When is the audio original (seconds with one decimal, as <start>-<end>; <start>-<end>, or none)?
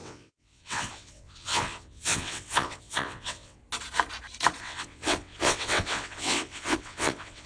3.6-4.6